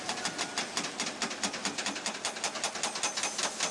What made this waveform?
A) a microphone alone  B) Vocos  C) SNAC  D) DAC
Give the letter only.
A